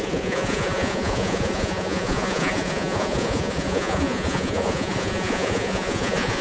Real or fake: fake